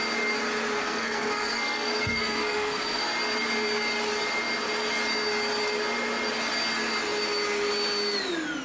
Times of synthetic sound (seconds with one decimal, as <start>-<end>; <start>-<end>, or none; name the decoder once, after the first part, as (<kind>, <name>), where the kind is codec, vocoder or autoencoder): 0.8-3.0 (codec, SNAC)